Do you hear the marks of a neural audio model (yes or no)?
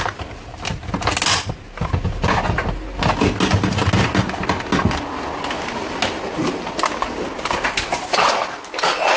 no